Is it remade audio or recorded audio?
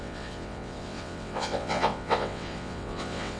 remade